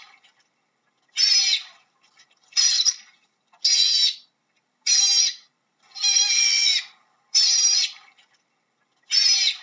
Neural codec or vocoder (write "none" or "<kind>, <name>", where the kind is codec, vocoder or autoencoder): none